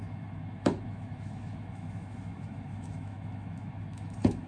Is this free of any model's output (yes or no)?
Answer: no